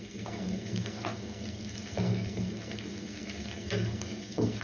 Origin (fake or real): fake